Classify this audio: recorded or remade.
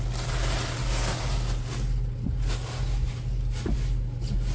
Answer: recorded